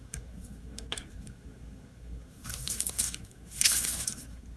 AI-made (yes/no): yes